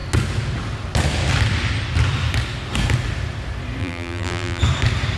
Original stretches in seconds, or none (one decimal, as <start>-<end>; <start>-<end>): 0.0-3.8; 4.6-5.2